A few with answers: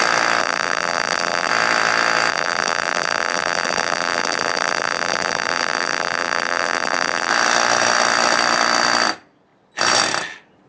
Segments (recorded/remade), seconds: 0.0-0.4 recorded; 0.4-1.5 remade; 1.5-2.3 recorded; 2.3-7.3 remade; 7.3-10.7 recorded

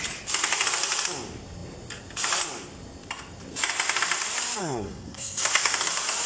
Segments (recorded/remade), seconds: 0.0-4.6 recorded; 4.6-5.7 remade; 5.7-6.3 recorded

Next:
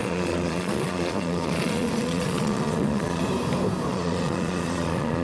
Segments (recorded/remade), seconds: 0.0-3.2 remade; 3.2-3.9 recorded; 3.9-5.2 remade

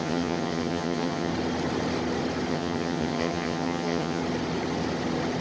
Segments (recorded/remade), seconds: 0.0-1.3 remade; 1.3-2.5 recorded; 2.5-4.2 remade; 4.2-5.4 recorded

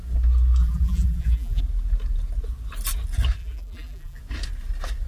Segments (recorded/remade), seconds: 0.0-0.6 recorded; 0.6-1.6 remade; 1.6-3.4 recorded; 3.4-4.2 remade; 4.2-5.1 recorded

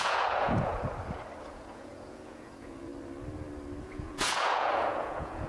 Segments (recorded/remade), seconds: 0.0-0.7 remade; 0.7-1.4 recorded; 1.4-2.9 remade; 2.9-3.8 recorded; 3.8-5.5 remade

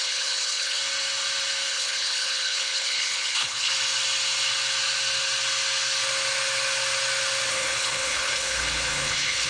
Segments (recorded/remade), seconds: 0.0-0.8 remade; 0.8-1.7 recorded; 1.7-3.7 remade; 3.7-7.5 recorded; 7.5-9.5 remade